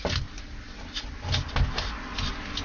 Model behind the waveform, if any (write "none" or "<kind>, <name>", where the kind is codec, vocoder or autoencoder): none